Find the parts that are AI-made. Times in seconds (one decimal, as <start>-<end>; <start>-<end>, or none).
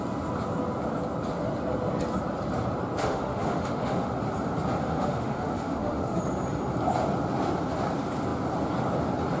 3.0-4.1; 4.8-6.2